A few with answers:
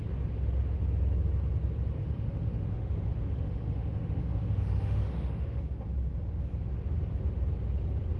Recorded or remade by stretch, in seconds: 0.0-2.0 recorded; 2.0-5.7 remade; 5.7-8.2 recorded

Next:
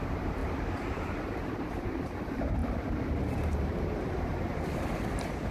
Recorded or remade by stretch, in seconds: 0.0-0.4 remade; 0.4-1.5 recorded; 1.5-2.6 remade; 2.6-3.2 recorded; 3.2-5.5 remade